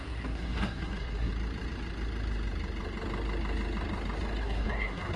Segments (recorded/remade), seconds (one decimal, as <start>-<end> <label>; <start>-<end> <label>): 0.0-1.3 remade; 1.3-4.4 recorded; 4.4-5.2 remade